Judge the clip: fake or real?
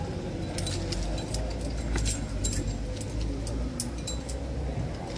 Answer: real